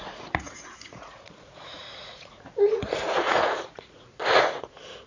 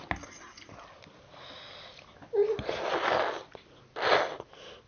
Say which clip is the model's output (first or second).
first